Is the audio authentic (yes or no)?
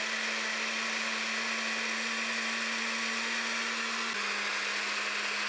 yes